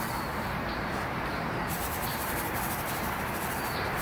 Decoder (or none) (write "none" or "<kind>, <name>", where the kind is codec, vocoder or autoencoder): vocoder, BigVGAN v2